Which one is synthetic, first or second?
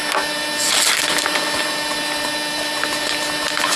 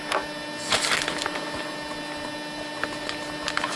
first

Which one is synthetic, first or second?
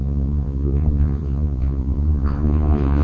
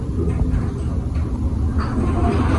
first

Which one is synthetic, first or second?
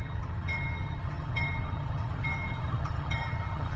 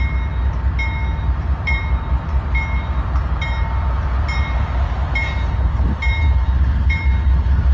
first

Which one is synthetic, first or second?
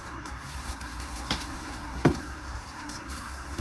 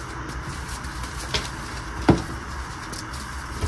first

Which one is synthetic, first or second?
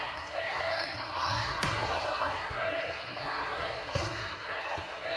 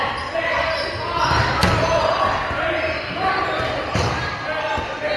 first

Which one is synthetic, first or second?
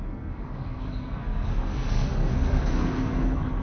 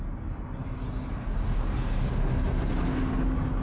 first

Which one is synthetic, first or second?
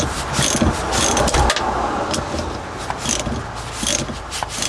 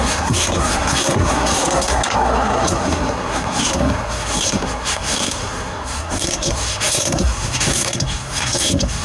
second